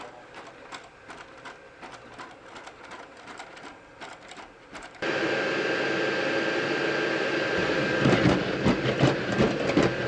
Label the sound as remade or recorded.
recorded